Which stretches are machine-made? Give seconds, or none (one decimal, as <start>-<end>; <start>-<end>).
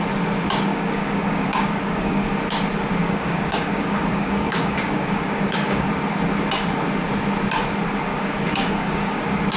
0.7-2.3; 3.0-5.9; 8.1-9.2